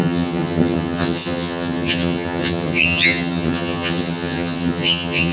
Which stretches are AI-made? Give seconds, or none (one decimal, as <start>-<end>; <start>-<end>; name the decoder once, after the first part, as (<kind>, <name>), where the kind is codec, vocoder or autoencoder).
0.0-5.3 (vocoder, HiFi-GAN)